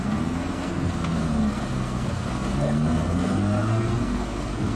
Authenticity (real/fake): fake